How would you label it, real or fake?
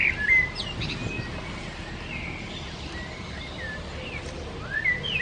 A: real